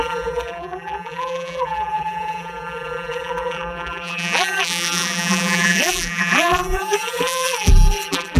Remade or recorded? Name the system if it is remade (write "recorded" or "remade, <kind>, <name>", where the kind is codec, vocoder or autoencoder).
remade, vocoder, BigVGAN v2